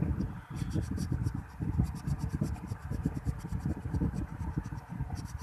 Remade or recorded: recorded